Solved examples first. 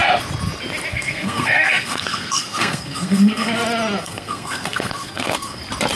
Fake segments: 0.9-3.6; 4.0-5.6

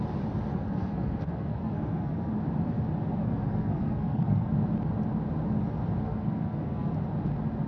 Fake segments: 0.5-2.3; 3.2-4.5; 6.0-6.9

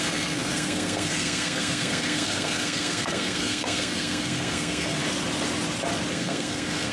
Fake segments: 0.0-5.0; 6.1-6.9